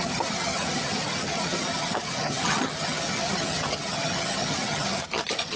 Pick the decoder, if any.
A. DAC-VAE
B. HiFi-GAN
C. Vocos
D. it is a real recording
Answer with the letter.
B